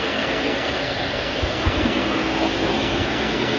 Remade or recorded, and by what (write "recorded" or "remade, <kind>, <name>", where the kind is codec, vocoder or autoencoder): remade, codec, SNAC